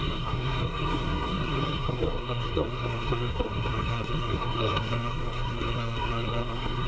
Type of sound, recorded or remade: remade